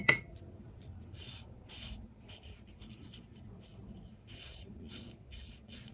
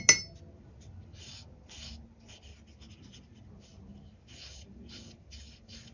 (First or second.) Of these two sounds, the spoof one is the first